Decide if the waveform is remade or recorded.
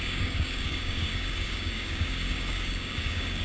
remade